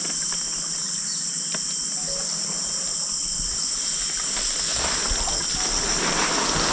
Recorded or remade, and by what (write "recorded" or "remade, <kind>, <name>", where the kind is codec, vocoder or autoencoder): recorded